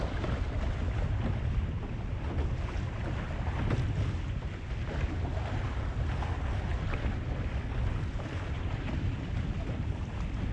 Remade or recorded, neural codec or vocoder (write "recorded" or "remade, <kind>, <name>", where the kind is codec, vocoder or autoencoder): recorded